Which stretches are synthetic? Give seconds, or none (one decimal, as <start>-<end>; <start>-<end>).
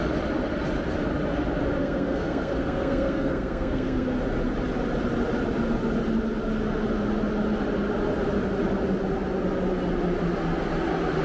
1.8-4.1